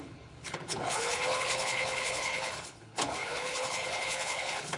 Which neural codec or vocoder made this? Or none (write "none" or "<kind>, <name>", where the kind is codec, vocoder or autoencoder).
codec, HILCodec